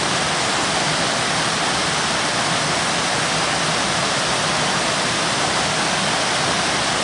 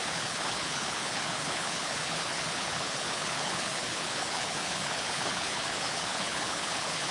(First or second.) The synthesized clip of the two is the second